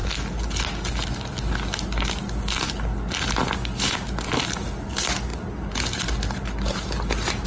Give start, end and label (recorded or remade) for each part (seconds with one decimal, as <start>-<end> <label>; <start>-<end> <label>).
0.0-7.5 recorded